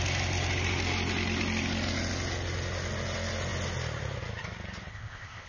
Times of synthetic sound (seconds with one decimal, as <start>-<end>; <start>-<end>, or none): 4.9-5.5